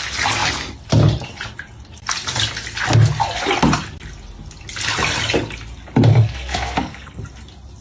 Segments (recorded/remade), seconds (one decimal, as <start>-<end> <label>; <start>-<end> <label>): 0.0-6.1 recorded; 6.1-7.2 remade; 7.2-7.8 recorded